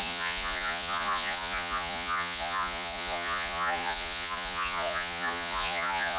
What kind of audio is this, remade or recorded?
remade